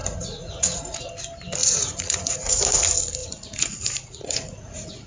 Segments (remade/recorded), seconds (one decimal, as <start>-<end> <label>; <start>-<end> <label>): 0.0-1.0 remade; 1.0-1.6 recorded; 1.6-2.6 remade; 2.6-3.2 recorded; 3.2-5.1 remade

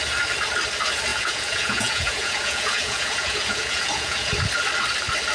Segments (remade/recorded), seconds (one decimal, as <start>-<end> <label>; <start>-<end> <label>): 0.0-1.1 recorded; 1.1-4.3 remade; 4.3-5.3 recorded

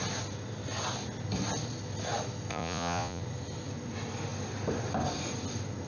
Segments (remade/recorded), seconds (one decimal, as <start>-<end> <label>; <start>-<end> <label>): 0.0-2.5 recorded; 2.5-3.2 remade; 3.2-5.9 recorded

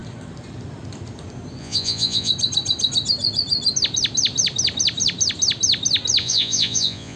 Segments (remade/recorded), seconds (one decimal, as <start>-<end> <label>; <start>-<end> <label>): 0.0-1.6 recorded; 1.6-2.3 remade; 2.3-6.2 recorded; 6.2-7.2 remade

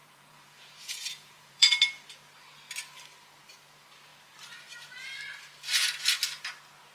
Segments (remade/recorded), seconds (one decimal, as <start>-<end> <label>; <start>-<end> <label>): 0.0-1.7 remade; 1.7-6.9 recorded

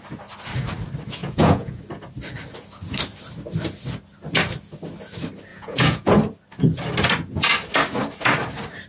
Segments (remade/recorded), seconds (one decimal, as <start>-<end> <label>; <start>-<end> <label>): 0.0-1.2 recorded; 1.2-1.8 remade; 1.8-5.5 recorded; 5.5-6.1 remade; 6.1-8.9 recorded

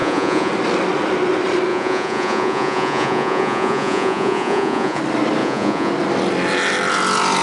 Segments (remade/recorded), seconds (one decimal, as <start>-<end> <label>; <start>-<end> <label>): 0.0-0.5 remade; 0.5-1.7 recorded; 1.7-5.0 remade; 5.0-5.4 recorded; 5.4-5.9 remade; 5.9-7.4 recorded